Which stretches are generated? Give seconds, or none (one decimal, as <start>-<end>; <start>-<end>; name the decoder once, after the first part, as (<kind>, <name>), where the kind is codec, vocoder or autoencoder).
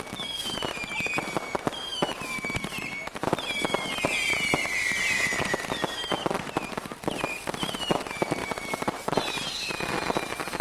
8.4-9.2 (vocoder, BigVGAN v2)